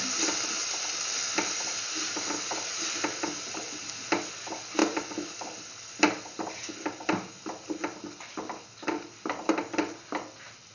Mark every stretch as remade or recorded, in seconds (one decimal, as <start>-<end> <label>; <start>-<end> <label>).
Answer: 0.0-10.7 recorded